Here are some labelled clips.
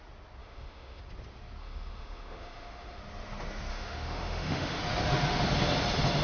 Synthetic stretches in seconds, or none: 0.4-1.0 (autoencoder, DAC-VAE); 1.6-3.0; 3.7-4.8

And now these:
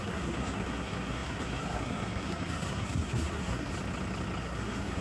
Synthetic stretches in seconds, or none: 0.0-3.7 (codec, SNAC); 4.4-5.0